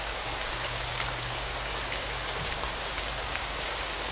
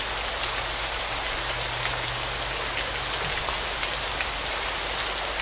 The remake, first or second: first